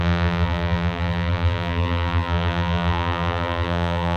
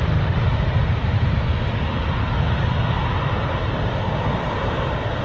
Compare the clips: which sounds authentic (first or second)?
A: second